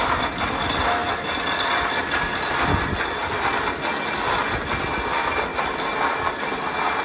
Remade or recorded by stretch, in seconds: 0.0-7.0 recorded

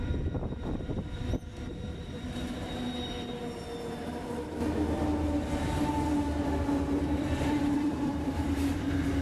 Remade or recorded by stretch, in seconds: 0.0-1.2 remade; 1.2-1.7 recorded; 1.7-2.4 remade; 2.4-7.0 recorded; 7.0-9.2 remade